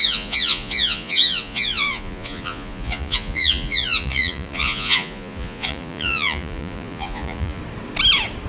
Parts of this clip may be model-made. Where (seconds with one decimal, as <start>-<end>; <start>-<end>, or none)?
0.0-7.6